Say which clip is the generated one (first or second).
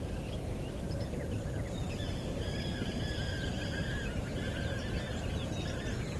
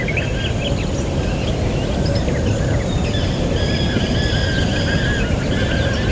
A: first